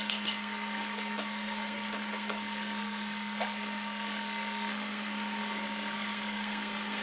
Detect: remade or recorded remade